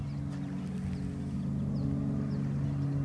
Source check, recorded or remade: recorded